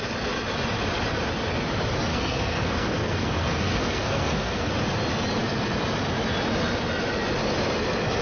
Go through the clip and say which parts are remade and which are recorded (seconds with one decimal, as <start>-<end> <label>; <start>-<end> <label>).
0.0-2.1 recorded; 2.1-4.7 remade; 4.7-8.2 recorded